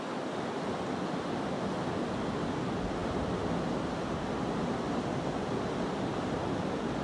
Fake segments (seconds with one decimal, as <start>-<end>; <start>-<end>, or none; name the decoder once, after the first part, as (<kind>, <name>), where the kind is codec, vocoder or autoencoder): none